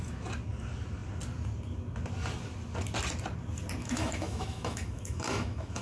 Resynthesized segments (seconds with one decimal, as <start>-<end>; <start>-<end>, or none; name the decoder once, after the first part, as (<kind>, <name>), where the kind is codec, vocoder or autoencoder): 3.8-5.8 (autoencoder, DAC-VAE)